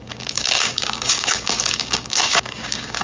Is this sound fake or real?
fake